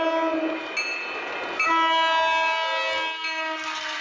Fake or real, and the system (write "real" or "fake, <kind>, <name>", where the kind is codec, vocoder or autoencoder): real